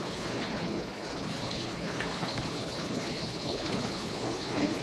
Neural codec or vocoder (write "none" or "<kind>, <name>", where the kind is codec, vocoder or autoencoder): codec, HILCodec